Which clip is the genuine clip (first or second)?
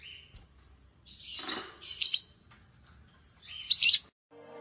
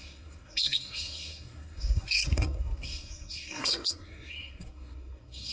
first